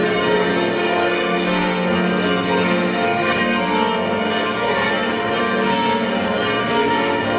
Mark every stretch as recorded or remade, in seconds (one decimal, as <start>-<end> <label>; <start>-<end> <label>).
0.0-0.5 recorded; 0.5-4.9 remade; 4.9-5.4 recorded; 5.4-6.1 remade; 6.1-6.6 recorded; 6.6-7.4 remade